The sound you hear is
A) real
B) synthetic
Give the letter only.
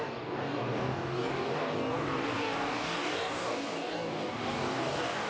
B